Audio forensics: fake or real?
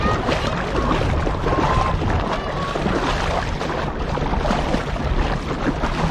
real